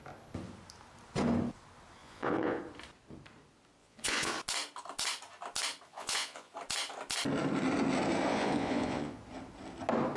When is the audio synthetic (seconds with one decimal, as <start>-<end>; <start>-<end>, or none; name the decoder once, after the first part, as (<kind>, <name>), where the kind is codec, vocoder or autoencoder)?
2.0-2.6 (vocoder, Vocos); 3.8-4.3; 5.9-6.5; 8.3-9.2